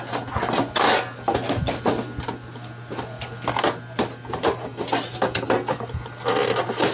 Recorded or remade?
recorded